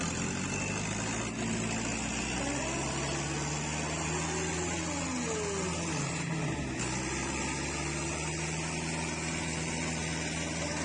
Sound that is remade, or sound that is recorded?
recorded